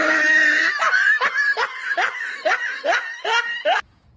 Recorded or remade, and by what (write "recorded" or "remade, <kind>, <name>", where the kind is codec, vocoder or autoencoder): recorded